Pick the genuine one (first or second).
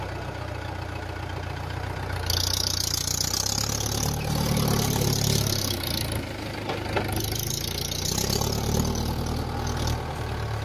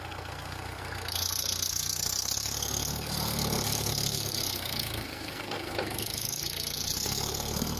first